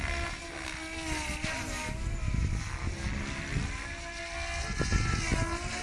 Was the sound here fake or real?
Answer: real